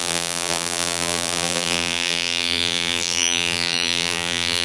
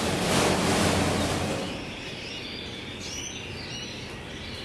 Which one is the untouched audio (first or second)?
second